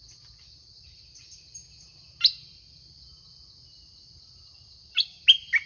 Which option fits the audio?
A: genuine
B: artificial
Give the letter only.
A